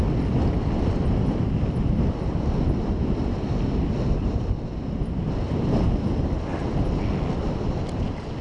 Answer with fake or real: real